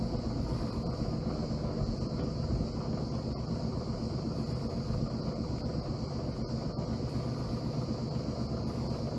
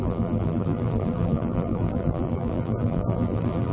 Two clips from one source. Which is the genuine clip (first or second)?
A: first